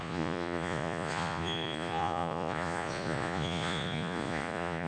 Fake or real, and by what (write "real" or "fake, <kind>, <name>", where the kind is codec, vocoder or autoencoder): fake, vocoder, Vocos